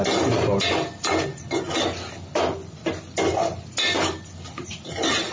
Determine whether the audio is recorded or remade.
recorded